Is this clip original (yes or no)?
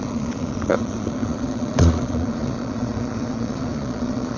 no